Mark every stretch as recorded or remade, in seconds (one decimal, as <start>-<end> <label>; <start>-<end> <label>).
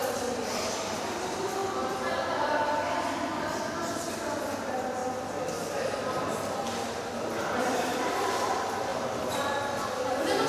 0.0-5.0 remade; 5.0-6.2 recorded; 6.2-8.9 remade; 8.9-9.9 recorded; 9.9-10.5 remade